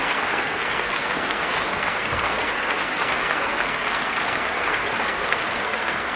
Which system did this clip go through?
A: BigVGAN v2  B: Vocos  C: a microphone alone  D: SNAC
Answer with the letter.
D